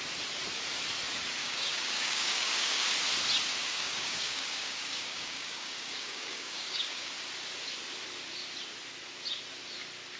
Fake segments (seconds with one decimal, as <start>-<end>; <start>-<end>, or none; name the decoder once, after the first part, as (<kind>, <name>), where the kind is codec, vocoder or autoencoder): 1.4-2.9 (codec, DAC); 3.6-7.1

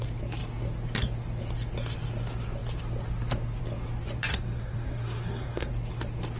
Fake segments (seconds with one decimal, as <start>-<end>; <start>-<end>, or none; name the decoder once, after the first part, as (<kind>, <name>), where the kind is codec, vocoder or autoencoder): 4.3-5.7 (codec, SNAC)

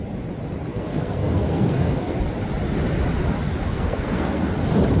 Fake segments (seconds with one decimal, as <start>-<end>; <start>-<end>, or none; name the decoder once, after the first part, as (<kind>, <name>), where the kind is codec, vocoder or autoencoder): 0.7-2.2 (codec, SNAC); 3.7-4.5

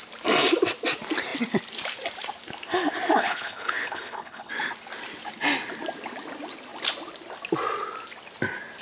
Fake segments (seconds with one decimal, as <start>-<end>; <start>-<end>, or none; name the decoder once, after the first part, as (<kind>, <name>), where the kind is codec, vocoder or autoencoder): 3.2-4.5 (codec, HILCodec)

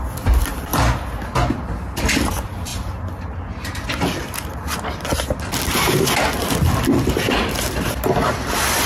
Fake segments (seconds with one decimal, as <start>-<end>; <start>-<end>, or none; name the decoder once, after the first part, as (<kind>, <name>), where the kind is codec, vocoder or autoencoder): 0.0-0.7 (vocoder, BigVGAN v2); 1.4-8.9